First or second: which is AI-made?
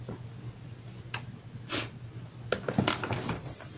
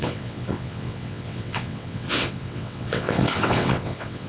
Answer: second